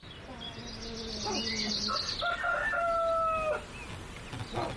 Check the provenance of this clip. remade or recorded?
recorded